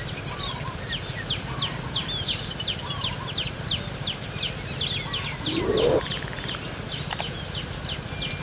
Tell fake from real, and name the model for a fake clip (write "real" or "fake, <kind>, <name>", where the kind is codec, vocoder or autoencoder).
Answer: real